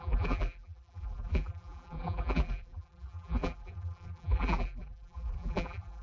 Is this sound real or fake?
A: fake